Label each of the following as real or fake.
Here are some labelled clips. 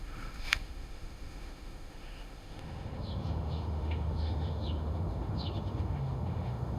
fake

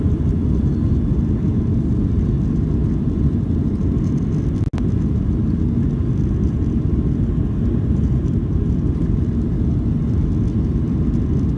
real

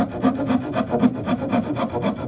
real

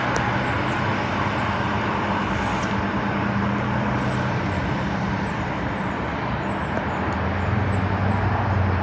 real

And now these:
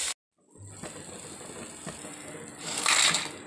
real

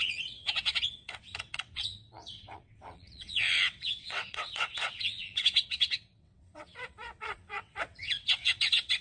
fake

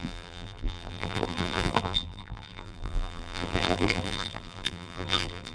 fake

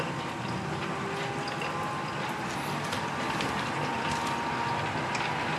real